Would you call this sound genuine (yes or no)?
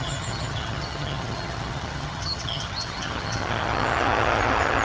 no